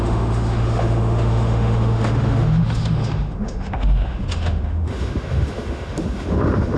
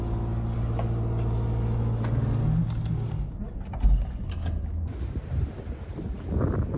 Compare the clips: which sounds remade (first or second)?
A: first